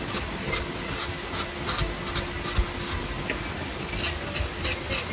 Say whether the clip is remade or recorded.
recorded